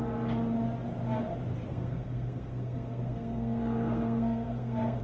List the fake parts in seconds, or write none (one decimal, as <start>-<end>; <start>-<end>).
1.7-5.0